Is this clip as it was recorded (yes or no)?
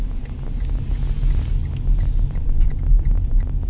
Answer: yes